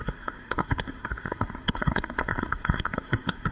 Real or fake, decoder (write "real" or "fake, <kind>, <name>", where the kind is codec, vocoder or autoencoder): fake, codec, SNAC